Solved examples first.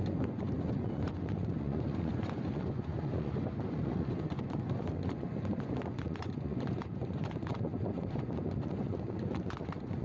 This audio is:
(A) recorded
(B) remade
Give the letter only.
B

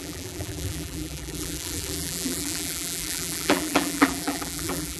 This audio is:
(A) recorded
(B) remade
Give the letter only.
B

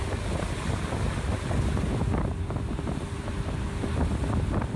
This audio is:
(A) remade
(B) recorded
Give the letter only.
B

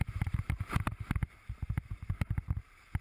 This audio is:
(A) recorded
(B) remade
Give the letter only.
B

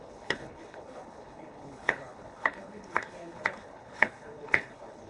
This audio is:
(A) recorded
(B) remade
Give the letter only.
B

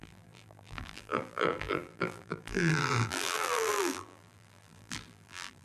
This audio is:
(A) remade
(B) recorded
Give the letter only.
A